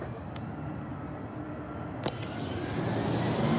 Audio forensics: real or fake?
real